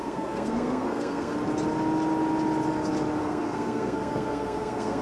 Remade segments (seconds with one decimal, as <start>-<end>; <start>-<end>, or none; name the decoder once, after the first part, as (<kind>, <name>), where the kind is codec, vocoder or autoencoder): 0.0-1.3 (codec, SNAC); 3.2-5.0